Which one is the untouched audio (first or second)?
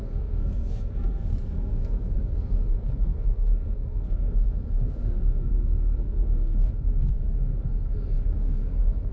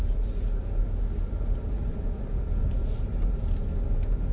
second